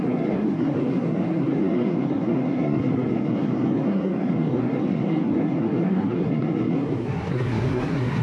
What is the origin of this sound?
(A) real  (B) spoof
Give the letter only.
B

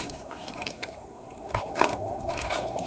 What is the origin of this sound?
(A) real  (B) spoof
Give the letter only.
B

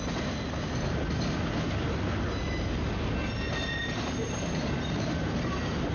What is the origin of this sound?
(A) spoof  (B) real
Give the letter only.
B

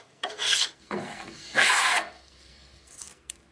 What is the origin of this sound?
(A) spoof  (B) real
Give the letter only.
A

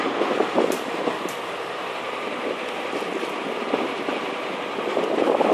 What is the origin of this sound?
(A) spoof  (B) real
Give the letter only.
B